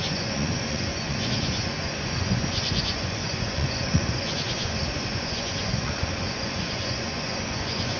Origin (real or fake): fake